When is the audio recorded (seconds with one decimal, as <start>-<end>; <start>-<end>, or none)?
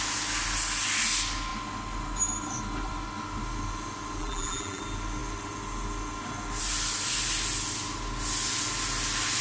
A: 0.0-4.2; 4.8-9.4